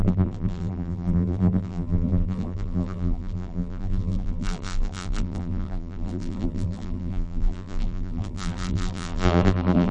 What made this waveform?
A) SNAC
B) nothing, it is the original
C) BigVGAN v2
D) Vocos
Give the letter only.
C